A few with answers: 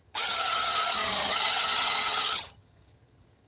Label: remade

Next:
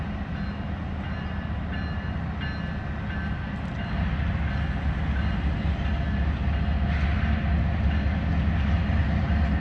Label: recorded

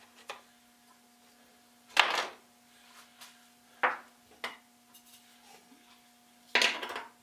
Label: recorded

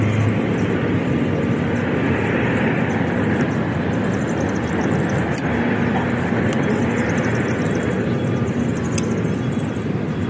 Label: recorded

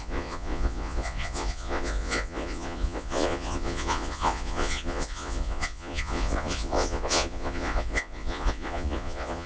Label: remade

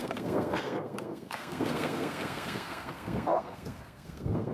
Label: remade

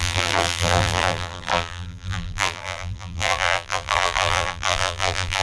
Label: remade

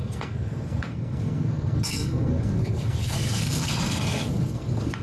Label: remade